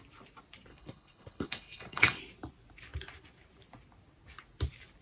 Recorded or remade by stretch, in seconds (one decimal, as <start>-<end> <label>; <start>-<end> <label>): 0.0-0.7 recorded; 0.7-2.2 remade; 2.2-5.0 recorded